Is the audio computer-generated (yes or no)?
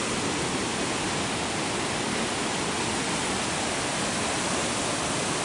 no